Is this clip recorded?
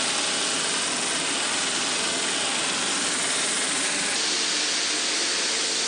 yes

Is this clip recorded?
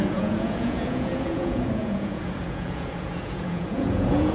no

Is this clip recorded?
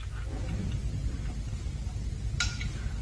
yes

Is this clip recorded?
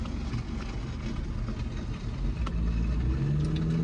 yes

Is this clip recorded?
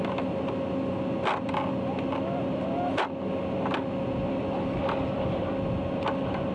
yes